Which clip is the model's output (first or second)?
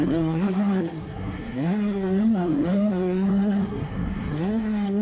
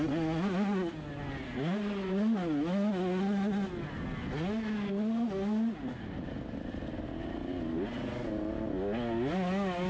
first